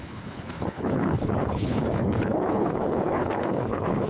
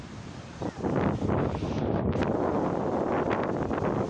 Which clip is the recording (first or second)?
second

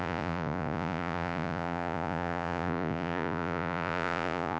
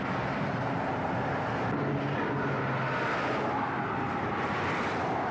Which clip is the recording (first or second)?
second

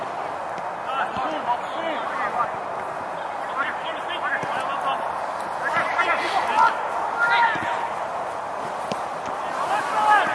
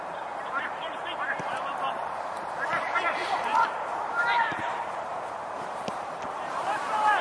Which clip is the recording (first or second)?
first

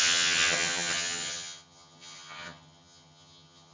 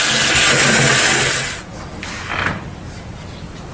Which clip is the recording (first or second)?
second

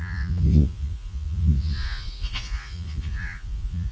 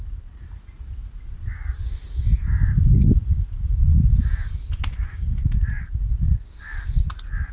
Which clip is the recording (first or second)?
second